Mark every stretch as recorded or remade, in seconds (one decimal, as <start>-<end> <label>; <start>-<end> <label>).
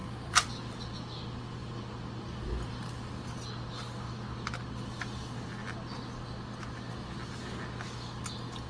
0.0-0.7 remade; 0.7-1.6 recorded; 1.6-3.3 remade; 3.3-8.7 recorded